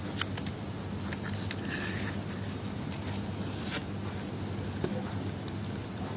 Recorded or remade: recorded